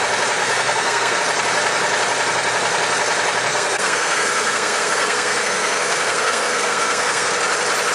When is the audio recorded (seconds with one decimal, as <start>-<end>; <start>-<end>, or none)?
0.0-0.4; 1.2-3.5; 7.3-7.9